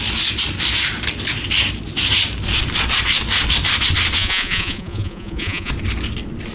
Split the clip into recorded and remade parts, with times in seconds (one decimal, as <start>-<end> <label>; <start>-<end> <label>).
0.0-4.2 recorded; 4.2-5.7 remade; 5.7-6.5 recorded

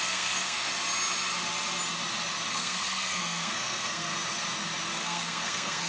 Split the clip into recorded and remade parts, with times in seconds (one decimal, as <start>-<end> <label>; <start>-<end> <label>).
0.0-0.7 remade; 0.7-2.5 recorded; 2.5-4.1 remade; 4.1-4.9 recorded; 4.9-5.9 remade

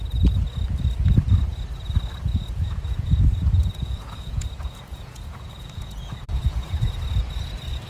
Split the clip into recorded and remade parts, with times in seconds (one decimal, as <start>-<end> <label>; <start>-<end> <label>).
0.0-2.3 recorded; 2.3-6.9 remade; 6.9-7.9 recorded

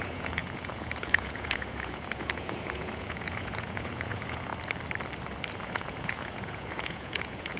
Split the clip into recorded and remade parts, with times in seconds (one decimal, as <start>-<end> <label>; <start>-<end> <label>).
0.0-4.5 remade; 4.5-5.6 recorded; 5.6-7.6 remade

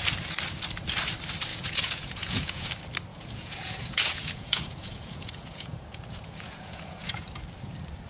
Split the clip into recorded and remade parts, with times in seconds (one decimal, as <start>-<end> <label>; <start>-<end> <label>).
0.0-1.5 recorded; 1.5-2.7 remade; 2.7-3.1 recorded; 3.1-7.3 remade; 7.3-8.1 recorded